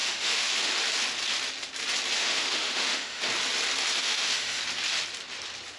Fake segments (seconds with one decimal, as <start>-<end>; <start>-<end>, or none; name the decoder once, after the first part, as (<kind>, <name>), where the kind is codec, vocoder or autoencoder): 0.0-0.7 (autoencoder, DAC-VAE); 2.2-3.2; 4.0-4.6